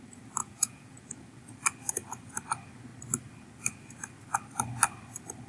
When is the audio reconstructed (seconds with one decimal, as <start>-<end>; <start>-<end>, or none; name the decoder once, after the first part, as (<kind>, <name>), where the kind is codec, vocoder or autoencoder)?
0.4-1.0 (vocoder, Vocos)